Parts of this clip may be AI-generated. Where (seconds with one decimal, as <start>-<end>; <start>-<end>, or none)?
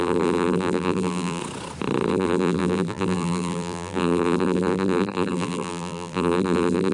0.0-1.4; 2.1-6.9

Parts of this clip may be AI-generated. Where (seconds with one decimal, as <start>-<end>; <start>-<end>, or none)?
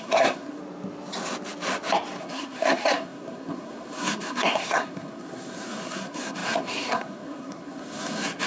0.0-0.6; 2.2-8.5